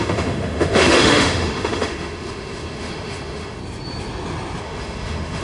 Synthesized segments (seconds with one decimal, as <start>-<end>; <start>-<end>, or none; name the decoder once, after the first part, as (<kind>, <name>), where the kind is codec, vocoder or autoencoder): 0.0-3.6 (autoencoder, DAC-VAE); 4.6-5.4